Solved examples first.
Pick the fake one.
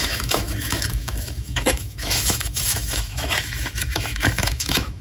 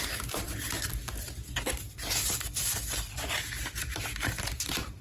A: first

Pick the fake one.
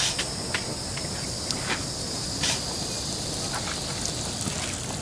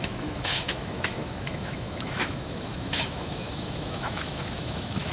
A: second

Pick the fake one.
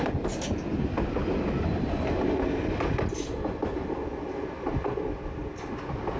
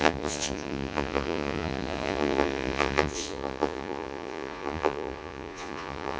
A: second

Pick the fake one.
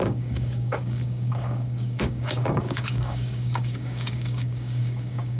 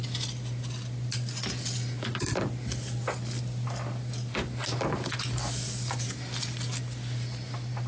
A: first